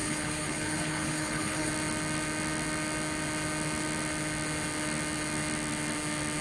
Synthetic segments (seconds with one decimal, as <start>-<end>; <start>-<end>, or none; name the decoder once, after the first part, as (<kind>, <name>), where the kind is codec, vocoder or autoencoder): 0.0-1.7 (codec, HILCodec)